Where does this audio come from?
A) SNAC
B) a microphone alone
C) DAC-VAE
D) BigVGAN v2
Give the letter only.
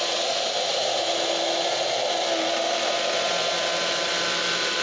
B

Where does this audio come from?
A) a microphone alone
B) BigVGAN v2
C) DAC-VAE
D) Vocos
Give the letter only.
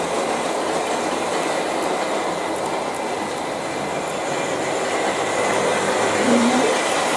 A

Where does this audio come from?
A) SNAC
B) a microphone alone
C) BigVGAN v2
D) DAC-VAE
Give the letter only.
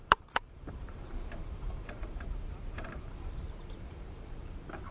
C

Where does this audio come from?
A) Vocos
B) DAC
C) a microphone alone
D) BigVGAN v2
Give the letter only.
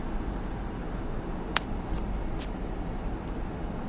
C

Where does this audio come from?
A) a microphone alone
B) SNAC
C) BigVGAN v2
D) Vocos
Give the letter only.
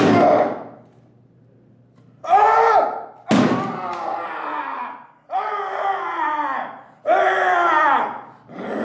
A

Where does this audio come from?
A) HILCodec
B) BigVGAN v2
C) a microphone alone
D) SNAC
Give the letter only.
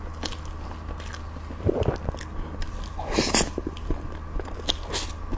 C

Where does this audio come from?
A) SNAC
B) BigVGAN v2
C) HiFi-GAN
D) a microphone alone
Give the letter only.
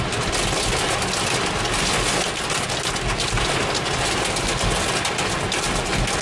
D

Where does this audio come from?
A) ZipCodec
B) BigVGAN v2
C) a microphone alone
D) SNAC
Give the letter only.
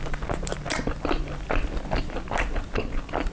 C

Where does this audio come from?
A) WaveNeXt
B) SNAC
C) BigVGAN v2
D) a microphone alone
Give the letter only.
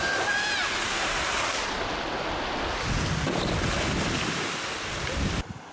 D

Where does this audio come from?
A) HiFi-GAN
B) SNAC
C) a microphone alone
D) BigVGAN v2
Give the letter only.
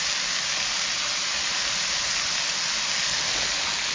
C